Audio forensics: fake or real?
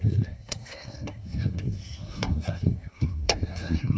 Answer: fake